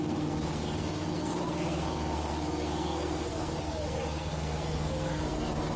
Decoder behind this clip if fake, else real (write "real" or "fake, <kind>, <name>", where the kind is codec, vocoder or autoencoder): fake, codec, SNAC